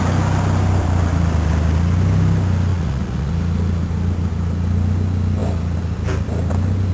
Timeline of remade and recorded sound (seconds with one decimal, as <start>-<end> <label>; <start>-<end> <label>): 0.0-2.7 recorded; 2.7-3.3 remade; 3.3-6.9 recorded